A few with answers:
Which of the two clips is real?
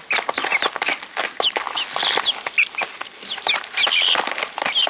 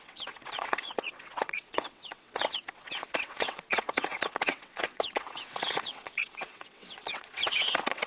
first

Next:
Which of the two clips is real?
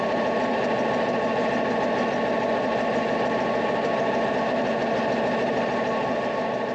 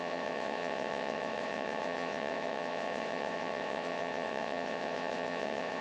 first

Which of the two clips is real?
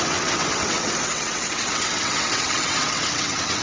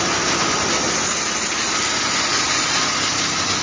second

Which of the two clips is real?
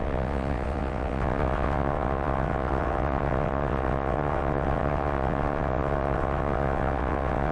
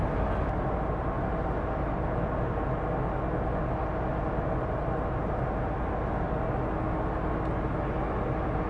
second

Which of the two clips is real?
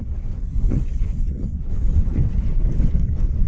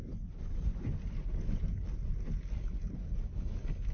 second